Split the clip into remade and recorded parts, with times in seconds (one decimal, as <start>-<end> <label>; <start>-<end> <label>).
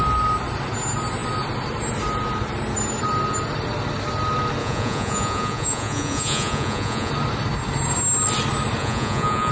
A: 0.0-4.6 recorded; 4.6-7.1 remade; 7.1-8.8 recorded; 8.8-9.5 remade